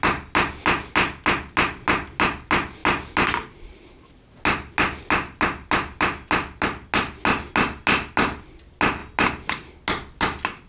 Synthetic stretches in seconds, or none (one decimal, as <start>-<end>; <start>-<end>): none